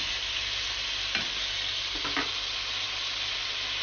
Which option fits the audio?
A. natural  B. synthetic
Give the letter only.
A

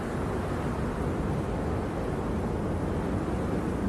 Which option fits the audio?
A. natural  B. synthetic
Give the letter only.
A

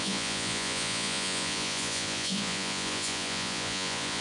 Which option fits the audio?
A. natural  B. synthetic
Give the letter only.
B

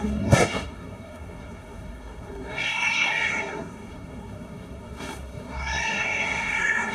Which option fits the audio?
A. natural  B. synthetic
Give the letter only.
B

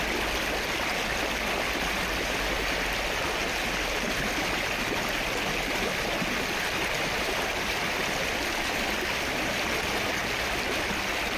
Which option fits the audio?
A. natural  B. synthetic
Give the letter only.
A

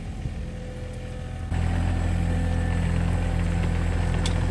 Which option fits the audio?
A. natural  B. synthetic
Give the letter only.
A